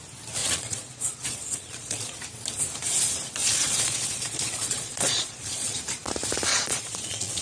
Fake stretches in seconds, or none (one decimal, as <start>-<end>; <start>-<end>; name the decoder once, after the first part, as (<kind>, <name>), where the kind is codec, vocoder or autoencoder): 0.4-2.2 (vocoder, Vocos); 3.4-5.8; 6.5-7.4